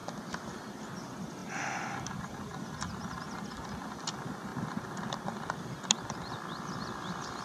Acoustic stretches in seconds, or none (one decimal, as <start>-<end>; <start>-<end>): 0.7-4.5; 6.8-7.4